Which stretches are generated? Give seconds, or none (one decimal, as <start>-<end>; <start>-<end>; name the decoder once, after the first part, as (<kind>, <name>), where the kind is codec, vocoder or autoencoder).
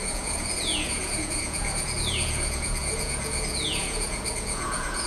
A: 0.0-5.1 (vocoder, Vocos)